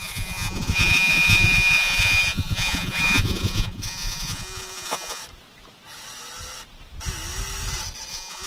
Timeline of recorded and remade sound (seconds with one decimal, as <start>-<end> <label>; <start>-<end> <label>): 0.0-5.2 remade; 5.2-8.1 recorded; 8.1-8.5 remade